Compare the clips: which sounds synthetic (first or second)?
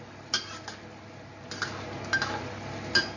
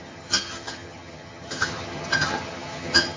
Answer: second